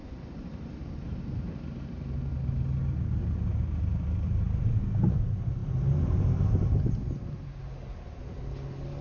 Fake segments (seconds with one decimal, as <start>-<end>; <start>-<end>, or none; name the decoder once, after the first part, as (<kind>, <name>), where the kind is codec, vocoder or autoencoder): 0.0-2.3 (vocoder, BigVGAN v2); 3.2-7.6